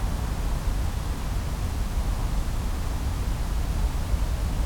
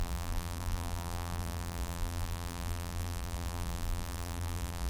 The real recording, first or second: first